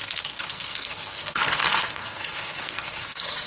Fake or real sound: fake